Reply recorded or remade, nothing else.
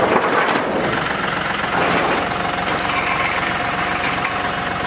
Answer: recorded